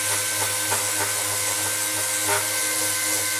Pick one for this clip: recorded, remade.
recorded